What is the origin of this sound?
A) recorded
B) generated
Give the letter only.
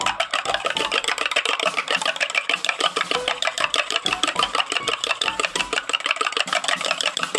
B